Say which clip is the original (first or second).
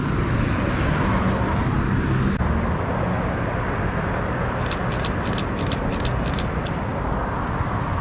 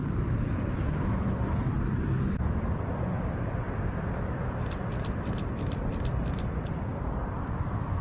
first